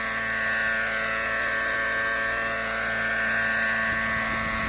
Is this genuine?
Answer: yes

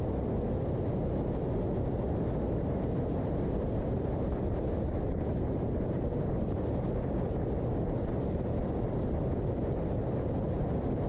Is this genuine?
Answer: yes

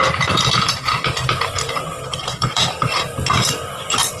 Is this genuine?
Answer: no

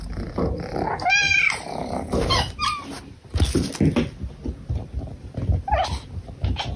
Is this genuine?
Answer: yes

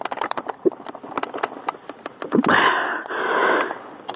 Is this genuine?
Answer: yes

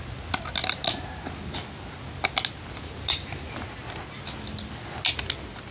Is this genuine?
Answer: yes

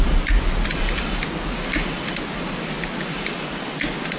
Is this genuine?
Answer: yes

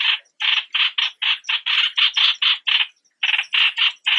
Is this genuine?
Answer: yes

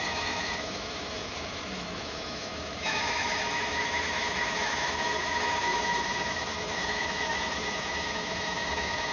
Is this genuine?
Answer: no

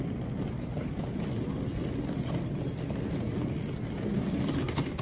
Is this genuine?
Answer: yes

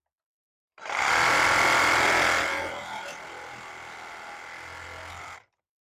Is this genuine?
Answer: yes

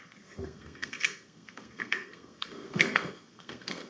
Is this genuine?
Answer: no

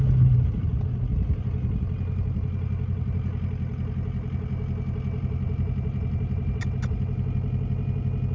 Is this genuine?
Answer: yes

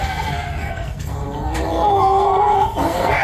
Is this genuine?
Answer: no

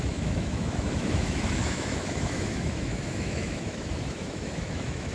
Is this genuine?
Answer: no